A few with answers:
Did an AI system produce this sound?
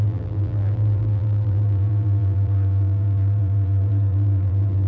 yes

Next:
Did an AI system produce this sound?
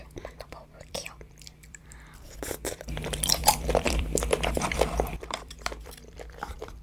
yes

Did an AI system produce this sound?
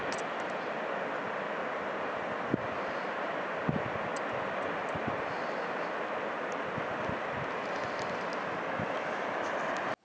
no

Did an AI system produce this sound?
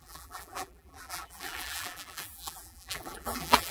yes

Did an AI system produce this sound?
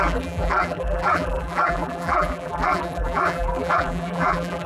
yes